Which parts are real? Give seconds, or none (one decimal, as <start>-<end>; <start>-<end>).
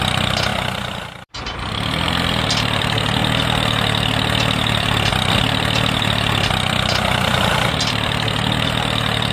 3.2-4.8